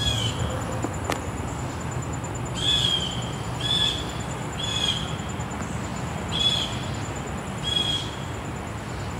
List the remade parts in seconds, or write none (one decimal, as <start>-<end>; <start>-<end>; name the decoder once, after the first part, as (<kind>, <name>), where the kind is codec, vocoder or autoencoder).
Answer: none